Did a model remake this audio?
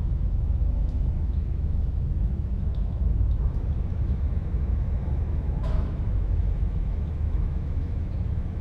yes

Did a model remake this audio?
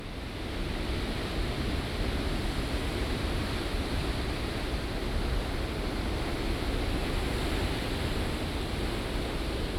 no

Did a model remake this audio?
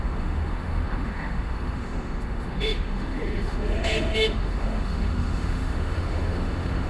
yes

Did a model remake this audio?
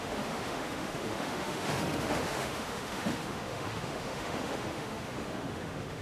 yes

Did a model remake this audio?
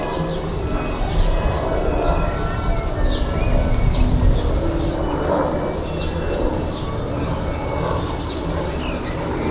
no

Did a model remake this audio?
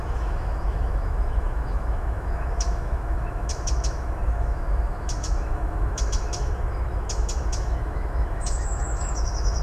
yes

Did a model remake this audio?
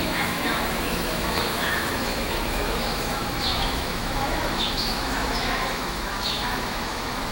yes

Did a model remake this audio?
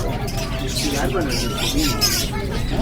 no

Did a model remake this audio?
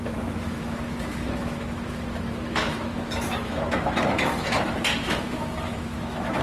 yes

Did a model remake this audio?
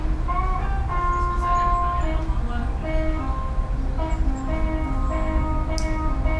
no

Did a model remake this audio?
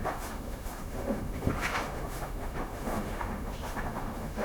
yes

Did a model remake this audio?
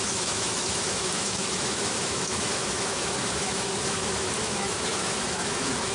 yes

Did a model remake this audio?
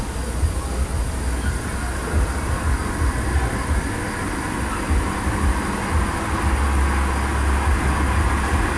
no